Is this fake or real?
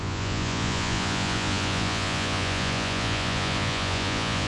fake